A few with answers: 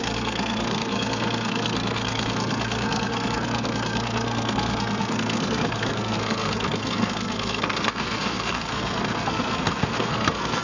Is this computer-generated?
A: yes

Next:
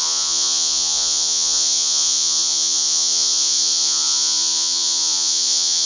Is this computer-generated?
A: yes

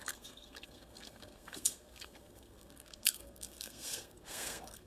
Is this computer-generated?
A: yes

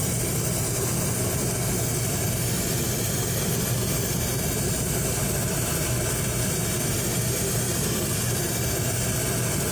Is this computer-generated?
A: no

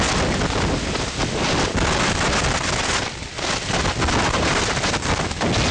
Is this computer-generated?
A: no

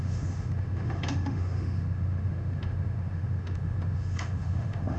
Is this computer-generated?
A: yes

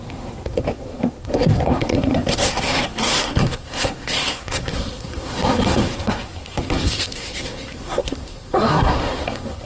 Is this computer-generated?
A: yes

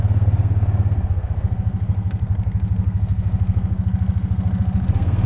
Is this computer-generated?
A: yes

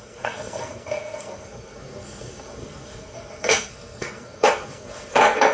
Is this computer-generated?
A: yes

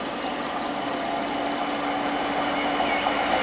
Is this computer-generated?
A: no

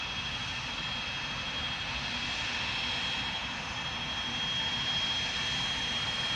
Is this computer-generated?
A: no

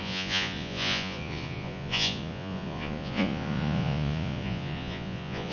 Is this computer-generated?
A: yes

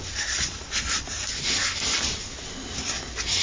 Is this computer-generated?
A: no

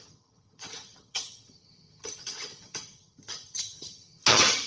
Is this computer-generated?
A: yes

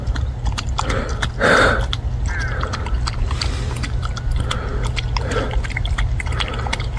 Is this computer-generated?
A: no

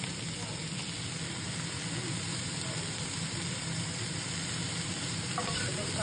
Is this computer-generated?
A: no